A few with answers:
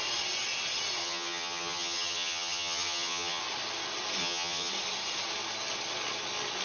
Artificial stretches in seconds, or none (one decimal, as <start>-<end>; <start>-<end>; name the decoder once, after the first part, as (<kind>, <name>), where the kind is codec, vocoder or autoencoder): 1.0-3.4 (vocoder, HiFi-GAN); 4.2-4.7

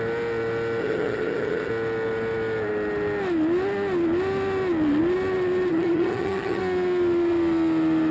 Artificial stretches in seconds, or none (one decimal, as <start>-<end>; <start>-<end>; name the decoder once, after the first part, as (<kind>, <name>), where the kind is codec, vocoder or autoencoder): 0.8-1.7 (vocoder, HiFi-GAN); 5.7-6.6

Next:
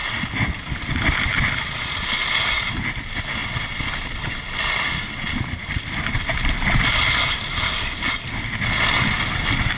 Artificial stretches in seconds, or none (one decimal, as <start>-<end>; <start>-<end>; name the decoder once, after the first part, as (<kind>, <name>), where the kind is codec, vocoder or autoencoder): none

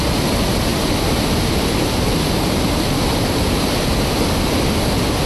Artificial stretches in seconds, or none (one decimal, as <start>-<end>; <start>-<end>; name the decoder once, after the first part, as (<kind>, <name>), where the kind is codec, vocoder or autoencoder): 0.7-3.9 (vocoder, BigVGAN v2)